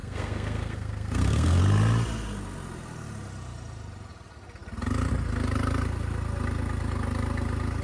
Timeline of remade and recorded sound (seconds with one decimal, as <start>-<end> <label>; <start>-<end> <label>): 0.0-1.6 remade; 1.6-7.8 recorded